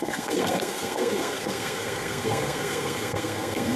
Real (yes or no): no